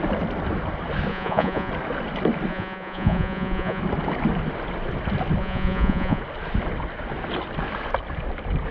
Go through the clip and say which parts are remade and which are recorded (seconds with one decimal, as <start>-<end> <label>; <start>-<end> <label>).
0.0-1.1 recorded; 1.1-1.7 remade; 1.7-2.5 recorded; 2.5-3.8 remade; 3.8-5.4 recorded; 5.4-6.2 remade; 6.2-8.7 recorded